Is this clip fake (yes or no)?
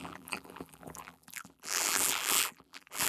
yes